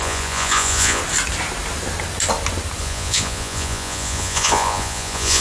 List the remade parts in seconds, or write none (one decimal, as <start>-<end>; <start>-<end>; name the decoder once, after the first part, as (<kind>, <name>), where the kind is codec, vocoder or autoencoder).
0.0-1.0 (vocoder, Vocos); 2.8-5.4